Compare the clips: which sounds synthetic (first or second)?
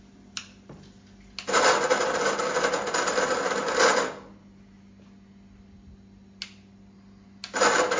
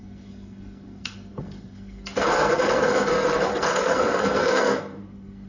second